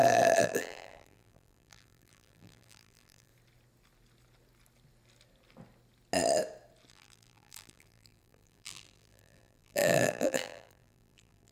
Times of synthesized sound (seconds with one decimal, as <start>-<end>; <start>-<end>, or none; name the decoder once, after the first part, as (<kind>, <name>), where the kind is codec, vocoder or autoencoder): 0.0-3.3 (vocoder, BigVGAN v2); 6.9-11.5